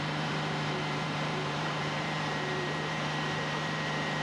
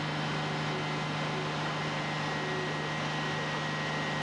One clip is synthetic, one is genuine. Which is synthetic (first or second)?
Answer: first